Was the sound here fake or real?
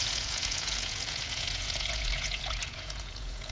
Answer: fake